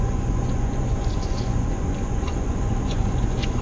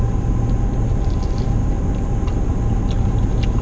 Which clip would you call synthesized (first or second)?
first